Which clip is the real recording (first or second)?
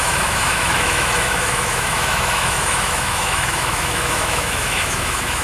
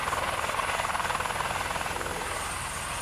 second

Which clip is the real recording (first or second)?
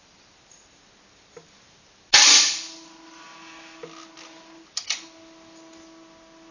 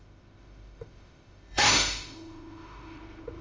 first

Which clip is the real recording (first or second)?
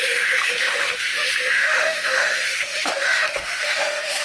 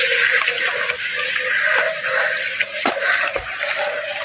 second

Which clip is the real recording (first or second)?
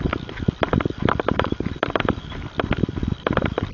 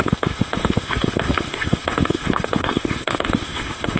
first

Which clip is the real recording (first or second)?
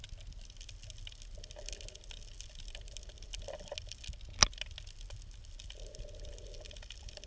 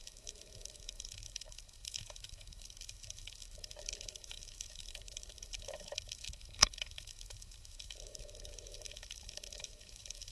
first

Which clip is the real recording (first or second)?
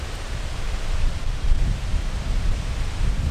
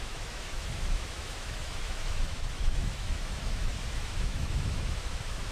first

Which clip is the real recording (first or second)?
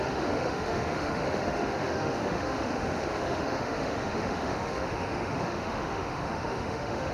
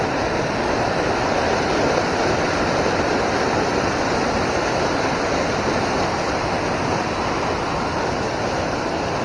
second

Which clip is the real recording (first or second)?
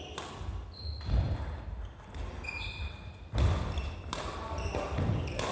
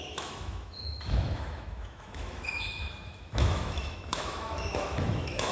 first